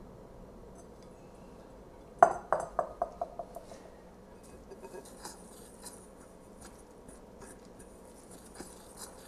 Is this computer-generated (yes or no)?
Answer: no